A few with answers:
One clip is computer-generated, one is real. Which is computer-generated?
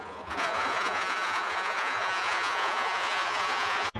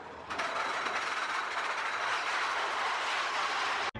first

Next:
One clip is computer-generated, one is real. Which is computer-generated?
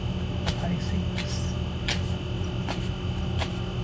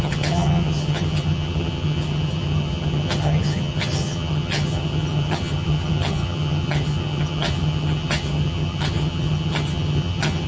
second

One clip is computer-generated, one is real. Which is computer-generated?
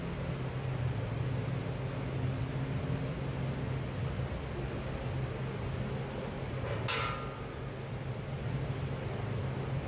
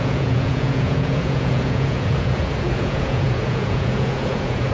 second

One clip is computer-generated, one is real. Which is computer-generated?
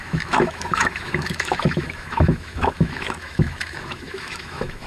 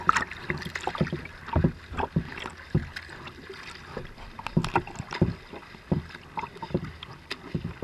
first